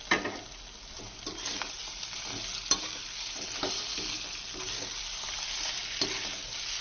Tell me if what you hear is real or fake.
real